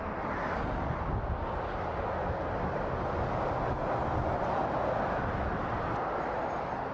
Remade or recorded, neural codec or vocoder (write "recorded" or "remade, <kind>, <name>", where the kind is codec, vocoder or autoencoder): recorded